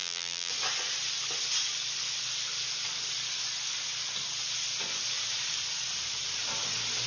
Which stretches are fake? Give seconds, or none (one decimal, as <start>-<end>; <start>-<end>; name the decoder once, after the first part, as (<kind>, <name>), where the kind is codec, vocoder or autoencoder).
0.0-0.5 (vocoder, BigVGAN v2)